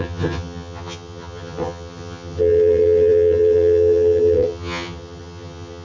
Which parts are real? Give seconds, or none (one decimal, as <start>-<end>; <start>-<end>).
none

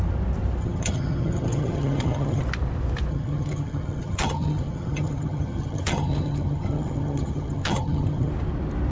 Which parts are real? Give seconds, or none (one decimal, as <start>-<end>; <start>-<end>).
0.0-0.6; 2.4-3.1; 8.3-8.9

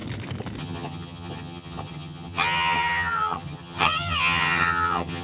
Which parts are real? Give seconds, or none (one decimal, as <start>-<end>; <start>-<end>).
0.0-0.6